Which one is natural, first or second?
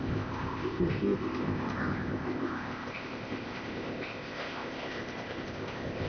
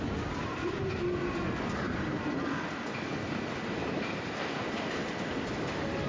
second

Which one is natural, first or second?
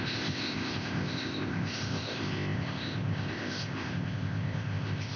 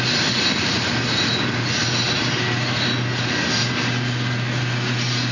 second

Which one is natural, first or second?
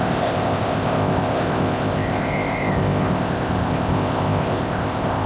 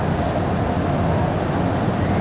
second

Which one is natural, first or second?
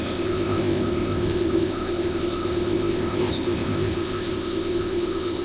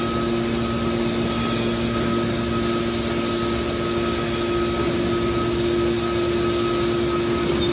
second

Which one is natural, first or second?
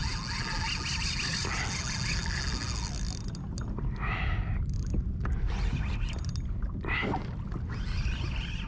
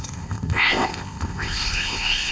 first